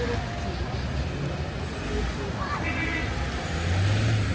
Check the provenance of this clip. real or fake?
real